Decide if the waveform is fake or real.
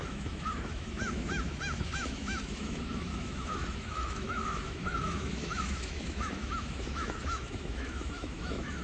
fake